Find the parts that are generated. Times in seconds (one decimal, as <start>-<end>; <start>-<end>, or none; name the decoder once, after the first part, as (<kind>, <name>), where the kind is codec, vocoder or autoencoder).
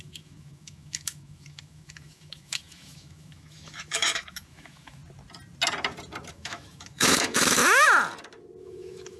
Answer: 0.0-5.0 (autoencoder, DAC-VAE); 6.3-7.6; 8.6-9.2